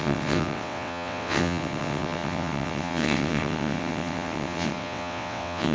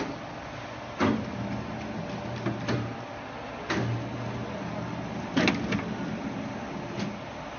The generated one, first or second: first